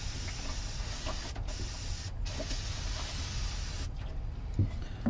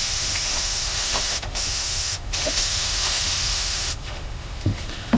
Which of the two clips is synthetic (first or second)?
second